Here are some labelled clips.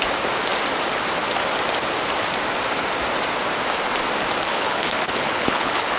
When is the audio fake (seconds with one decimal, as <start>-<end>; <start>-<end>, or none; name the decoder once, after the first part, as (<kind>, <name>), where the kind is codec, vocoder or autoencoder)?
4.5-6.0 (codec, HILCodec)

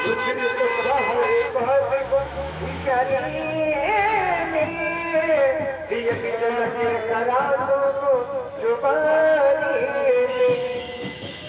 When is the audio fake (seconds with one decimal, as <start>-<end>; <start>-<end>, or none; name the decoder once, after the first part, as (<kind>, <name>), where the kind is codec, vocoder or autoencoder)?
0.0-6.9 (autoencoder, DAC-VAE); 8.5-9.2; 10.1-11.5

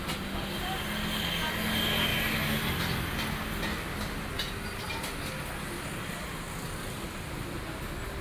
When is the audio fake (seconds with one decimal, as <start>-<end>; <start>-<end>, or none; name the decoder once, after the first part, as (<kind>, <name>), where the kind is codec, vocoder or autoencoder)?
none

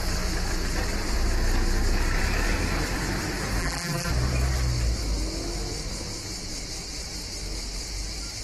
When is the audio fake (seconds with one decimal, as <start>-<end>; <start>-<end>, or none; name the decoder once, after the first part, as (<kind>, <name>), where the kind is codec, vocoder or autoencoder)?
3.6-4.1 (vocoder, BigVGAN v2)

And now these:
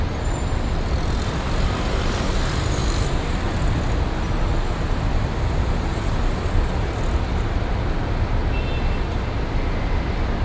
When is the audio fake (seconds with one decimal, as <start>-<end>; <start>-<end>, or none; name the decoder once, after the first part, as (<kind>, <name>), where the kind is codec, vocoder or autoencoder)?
none

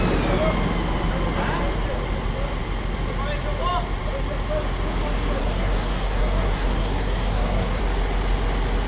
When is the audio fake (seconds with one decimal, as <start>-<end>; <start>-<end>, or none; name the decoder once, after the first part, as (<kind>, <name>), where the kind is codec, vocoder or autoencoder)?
5.4-7.8 (codec, SNAC)

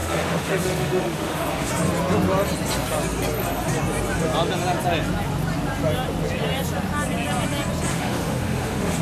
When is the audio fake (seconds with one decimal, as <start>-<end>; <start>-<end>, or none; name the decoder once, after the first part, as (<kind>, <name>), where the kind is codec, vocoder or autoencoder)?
0.0-1.7 (autoencoder, DAC-VAE); 7.9-9.0

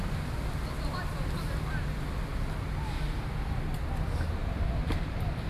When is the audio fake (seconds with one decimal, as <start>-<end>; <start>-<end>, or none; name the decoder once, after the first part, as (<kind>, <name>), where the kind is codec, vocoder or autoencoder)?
4.4-5.0 (vocoder, BigVGAN v2)